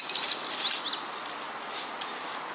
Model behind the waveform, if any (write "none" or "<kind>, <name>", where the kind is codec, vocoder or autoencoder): none